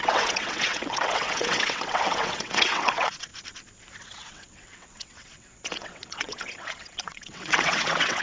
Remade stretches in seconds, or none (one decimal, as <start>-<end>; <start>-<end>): 0.0-3.3; 4.0-8.2